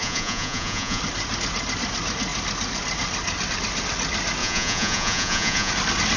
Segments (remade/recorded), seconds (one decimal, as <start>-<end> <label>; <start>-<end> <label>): 0.0-1.0 remade; 1.0-4.4 recorded; 4.4-5.7 remade; 5.7-6.2 recorded